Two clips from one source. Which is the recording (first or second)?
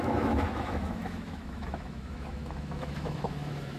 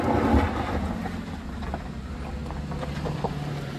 second